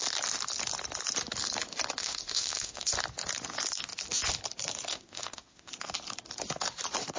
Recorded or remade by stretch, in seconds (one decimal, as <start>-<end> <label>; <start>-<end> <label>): 0.0-2.0 recorded; 2.0-2.9 remade; 2.9-4.9 recorded; 4.9-5.7 remade; 5.7-7.2 recorded